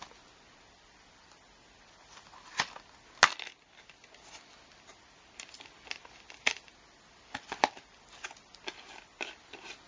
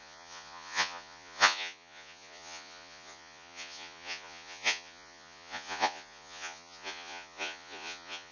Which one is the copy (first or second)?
second